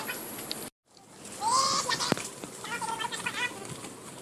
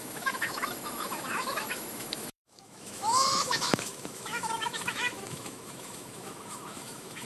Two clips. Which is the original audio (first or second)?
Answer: first